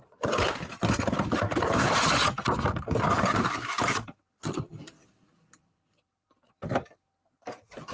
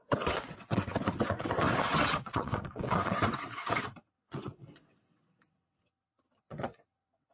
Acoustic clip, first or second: first